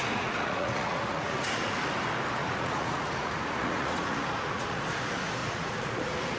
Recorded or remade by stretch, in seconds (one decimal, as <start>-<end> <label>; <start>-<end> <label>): 0.0-1.9 remade; 1.9-2.4 recorded; 2.4-4.8 remade; 4.8-5.4 recorded; 5.4-6.4 remade